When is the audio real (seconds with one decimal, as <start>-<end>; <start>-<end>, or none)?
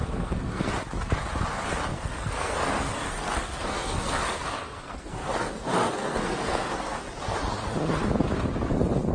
0.7-1.9; 7.0-9.1